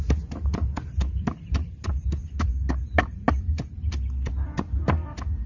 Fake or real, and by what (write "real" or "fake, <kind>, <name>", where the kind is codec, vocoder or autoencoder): real